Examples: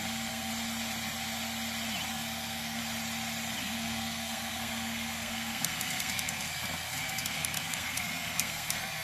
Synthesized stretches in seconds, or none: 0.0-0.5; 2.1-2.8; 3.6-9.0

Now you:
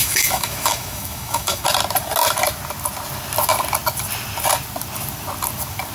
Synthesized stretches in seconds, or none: 0.0-1.6

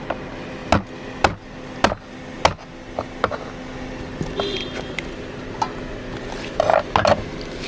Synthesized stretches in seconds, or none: none

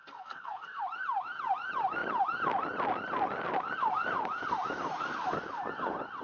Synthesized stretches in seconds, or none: 0.0-0.8

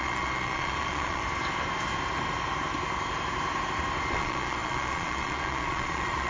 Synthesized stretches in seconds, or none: 0.0-1.2; 4.1-6.3

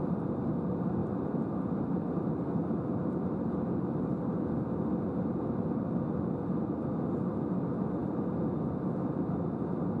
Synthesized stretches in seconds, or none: 1.0-4.3; 8.0-9.2

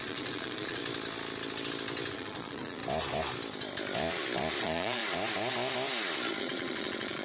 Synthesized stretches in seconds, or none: 0.0-0.8; 2.1-2.8; 4.6-5.0; 6.4-7.2

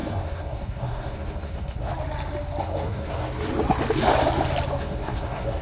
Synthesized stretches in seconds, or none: 0.0-1.9; 2.6-3.5; 4.8-5.6